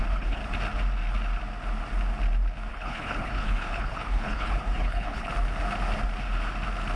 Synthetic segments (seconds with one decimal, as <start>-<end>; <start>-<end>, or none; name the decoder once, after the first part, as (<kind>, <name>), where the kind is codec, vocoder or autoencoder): 0.0-0.4 (codec, HILCodec); 2.7-5.3

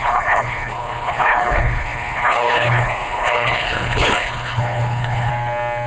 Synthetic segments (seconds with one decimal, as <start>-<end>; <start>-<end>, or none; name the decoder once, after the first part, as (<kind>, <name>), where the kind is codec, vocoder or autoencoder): 0.0-5.3 (codec, HILCodec)

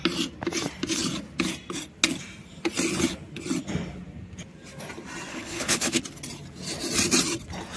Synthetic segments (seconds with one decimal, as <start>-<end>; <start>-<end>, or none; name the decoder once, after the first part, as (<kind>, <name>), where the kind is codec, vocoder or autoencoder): 5.3-6.0 (codec, HILCodec)

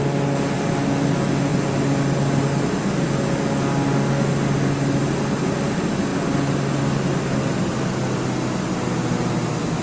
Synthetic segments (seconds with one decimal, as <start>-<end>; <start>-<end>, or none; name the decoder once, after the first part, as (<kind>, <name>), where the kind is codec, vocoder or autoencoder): none

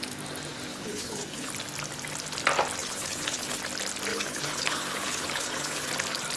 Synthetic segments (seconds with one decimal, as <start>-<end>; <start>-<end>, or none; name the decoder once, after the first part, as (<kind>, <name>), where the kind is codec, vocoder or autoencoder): 0.7-1.5 (codec, HILCodec); 2.8-3.6; 4.1-5.9

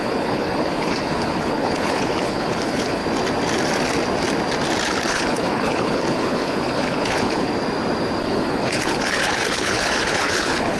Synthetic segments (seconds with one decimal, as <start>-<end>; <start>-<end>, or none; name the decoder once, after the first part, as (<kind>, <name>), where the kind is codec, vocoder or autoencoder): 0.0-3.0 (codec, HILCodec); 5.1-7.5; 8.2-10.8